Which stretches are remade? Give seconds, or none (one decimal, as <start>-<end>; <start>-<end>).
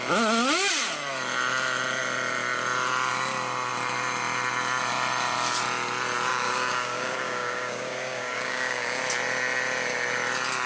6.3-9.0